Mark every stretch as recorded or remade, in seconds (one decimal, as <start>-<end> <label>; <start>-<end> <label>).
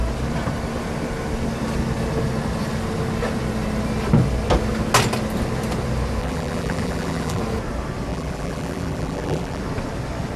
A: 0.0-6.2 recorded; 6.2-7.4 remade; 7.4-8.1 recorded; 8.1-9.6 remade; 9.6-10.4 recorded